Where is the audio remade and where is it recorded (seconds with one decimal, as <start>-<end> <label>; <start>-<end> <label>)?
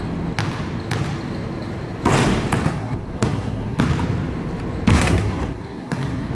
0.0-2.7 recorded; 2.7-3.8 remade; 3.8-4.9 recorded; 4.9-6.3 remade